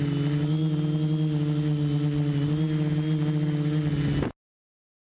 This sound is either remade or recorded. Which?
recorded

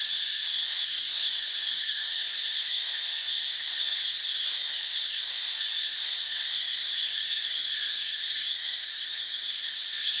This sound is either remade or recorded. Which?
remade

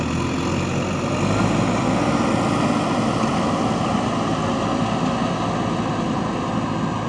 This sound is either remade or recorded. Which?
recorded